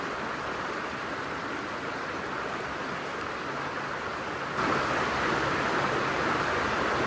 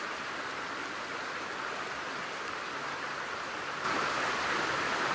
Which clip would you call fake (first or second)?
second